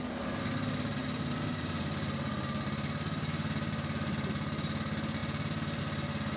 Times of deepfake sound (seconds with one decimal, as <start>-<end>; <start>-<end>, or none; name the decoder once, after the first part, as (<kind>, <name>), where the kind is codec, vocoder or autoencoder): 1.0-4.8 (vocoder, BigVGAN v2); 5.2-5.8

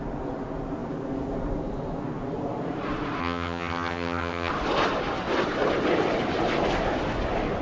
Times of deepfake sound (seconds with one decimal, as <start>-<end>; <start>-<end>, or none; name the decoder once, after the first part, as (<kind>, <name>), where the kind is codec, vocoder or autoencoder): 3.2-4.5 (vocoder, HiFi-GAN)

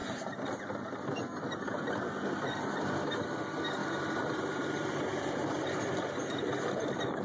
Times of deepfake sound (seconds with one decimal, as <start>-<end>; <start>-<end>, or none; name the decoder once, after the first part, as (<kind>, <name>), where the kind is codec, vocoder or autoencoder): 3.8-5.6 (vocoder, BigVGAN v2)

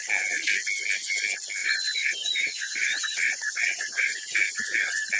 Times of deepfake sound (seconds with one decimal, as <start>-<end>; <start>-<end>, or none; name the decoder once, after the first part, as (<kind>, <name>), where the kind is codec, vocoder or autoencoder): 1.6-4.2 (vocoder, Vocos)